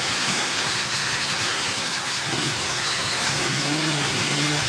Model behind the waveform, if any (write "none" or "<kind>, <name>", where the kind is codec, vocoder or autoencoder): codec, SNAC